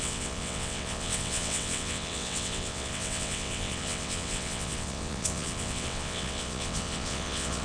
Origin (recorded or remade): remade